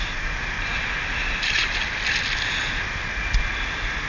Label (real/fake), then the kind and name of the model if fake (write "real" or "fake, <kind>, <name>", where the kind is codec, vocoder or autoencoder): real